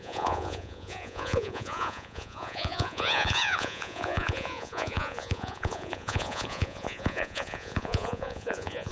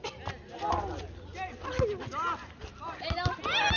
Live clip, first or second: second